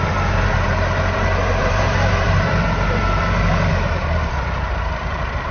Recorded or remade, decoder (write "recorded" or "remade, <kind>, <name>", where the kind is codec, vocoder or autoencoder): remade, vocoder, BigVGAN v2